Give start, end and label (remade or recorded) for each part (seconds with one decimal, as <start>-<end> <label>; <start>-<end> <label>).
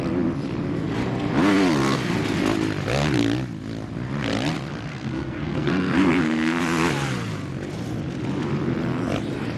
0.0-4.9 recorded; 4.9-6.6 remade; 6.6-9.6 recorded